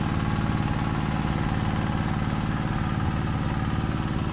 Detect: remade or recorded recorded